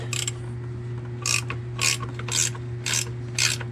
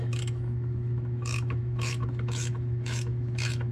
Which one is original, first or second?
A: first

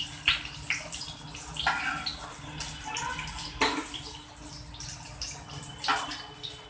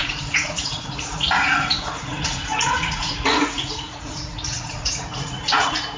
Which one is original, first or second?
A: first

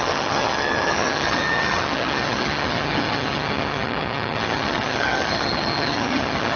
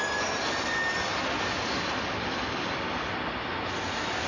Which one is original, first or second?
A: second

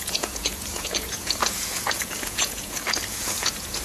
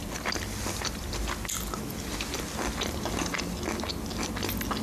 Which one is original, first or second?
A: second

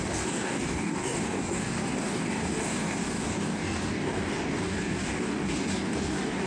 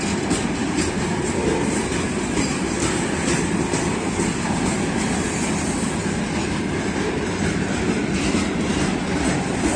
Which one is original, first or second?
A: second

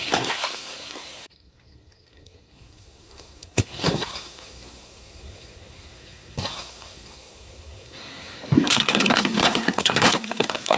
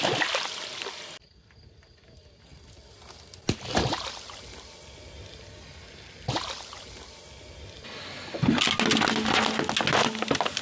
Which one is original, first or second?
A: second